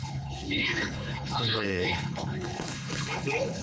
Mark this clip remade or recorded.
remade